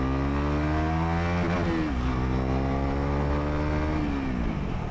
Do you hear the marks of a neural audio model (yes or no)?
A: no